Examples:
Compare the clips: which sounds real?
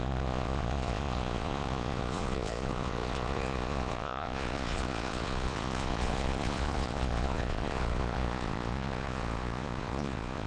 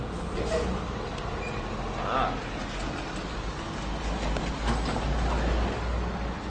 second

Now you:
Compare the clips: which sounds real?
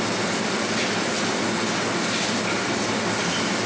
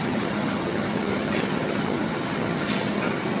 first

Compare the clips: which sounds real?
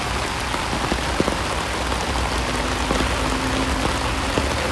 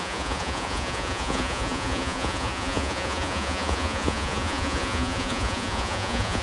first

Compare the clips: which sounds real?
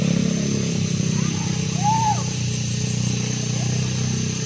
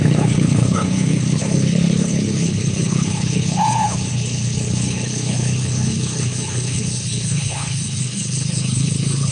first